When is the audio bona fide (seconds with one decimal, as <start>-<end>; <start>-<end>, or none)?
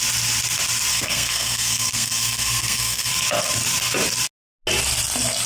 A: 0.0-0.9; 3.1-5.5